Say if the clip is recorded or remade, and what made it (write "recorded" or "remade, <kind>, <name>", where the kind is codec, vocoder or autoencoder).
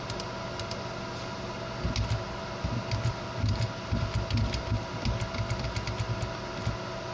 recorded